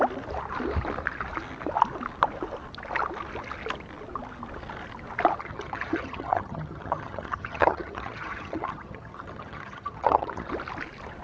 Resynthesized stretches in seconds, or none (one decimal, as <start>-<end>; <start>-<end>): 5.4-10.5